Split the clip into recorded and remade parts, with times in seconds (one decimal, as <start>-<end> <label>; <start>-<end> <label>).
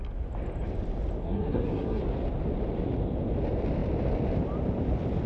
0.0-1.2 recorded; 1.2-2.0 remade; 2.0-5.3 recorded